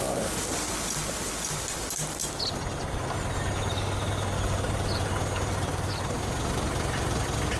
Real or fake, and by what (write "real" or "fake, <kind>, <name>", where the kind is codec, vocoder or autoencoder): real